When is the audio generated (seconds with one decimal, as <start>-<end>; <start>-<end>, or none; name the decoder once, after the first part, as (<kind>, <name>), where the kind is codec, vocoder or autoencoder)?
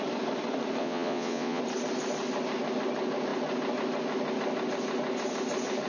0.8-1.6 (vocoder, WaveNeXt)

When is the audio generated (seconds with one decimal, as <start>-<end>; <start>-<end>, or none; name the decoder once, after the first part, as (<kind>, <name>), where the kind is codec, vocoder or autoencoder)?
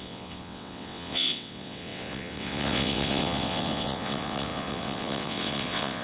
0.0-6.0 (vocoder, WaveNeXt)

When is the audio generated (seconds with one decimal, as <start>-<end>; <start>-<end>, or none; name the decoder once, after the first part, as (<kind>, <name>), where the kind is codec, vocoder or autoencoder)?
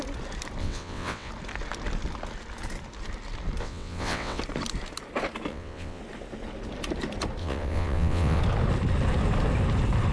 0.6-1.3 (vocoder, WaveNeXt); 3.6-4.4; 5.5-6.0; 7.4-8.4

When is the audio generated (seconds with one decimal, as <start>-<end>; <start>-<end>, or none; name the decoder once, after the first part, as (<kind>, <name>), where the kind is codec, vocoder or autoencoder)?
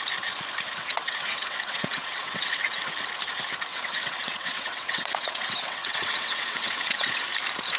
0.8-2.9 (vocoder, WaveNeXt); 3.7-7.2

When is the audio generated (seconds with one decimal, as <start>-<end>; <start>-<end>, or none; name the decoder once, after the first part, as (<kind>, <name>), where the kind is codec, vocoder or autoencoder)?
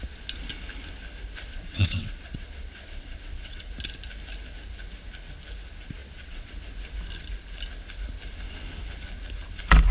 1.5-3.7 (vocoder, WaveNeXt); 6.0-6.5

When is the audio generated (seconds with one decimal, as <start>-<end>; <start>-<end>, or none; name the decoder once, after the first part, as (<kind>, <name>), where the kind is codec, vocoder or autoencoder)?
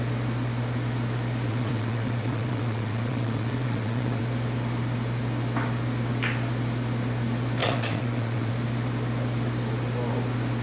1.5-4.2 (vocoder, WaveNeXt); 7.6-8.5